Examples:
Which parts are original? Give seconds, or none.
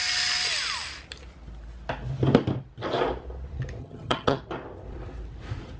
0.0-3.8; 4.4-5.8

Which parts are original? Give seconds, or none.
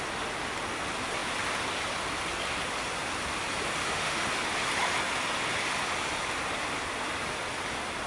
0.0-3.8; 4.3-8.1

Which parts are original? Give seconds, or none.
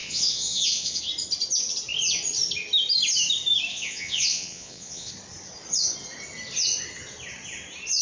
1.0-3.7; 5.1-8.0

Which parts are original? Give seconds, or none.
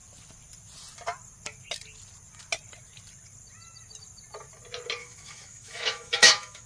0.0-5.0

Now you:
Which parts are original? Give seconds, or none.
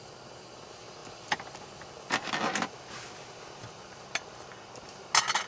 0.0-5.5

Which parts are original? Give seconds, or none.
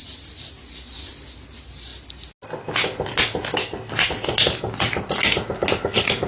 0.0-6.3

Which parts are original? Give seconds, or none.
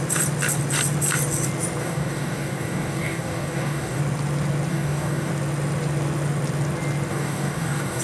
0.0-1.8; 4.0-4.7; 5.3-7.1